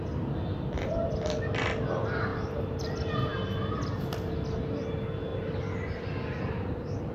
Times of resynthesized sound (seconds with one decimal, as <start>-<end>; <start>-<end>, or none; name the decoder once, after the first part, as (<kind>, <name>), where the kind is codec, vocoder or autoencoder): 2.3-2.9 (vocoder, BigVGAN v2)